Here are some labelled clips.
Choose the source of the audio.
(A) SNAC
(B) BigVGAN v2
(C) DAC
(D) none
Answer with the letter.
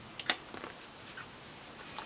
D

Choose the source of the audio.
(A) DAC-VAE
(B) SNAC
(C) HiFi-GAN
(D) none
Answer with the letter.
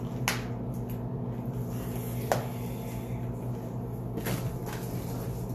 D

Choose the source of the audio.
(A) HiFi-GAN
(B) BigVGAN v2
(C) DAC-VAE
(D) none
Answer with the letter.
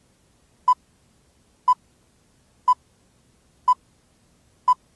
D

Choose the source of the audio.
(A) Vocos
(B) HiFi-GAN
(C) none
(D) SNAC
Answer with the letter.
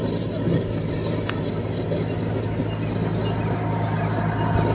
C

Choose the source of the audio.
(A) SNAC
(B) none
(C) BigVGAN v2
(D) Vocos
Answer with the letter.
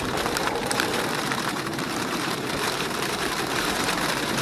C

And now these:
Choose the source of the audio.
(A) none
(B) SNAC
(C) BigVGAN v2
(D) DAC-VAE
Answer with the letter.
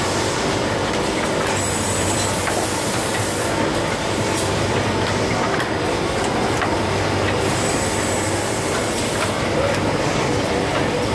C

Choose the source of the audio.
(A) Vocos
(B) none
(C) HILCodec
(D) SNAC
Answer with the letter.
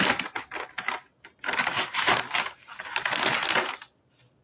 B